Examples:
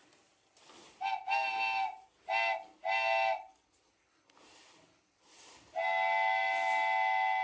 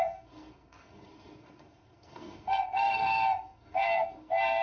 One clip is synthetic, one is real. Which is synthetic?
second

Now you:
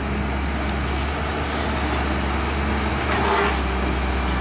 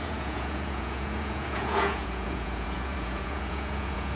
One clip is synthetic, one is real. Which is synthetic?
second